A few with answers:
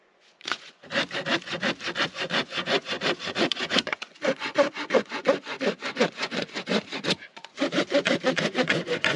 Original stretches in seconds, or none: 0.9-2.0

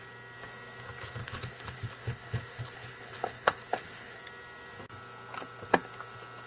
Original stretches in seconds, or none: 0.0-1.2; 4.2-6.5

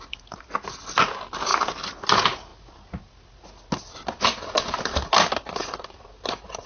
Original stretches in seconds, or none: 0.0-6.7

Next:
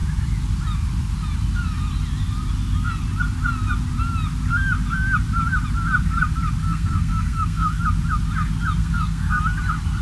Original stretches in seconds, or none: 0.0-6.6; 7.8-8.8; 9.4-10.0

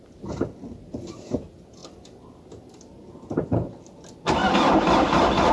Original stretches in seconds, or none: 0.0-5.5

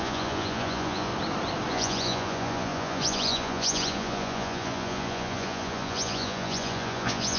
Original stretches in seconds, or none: 1.1-1.7

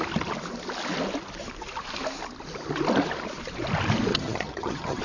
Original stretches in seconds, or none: 0.0-4.1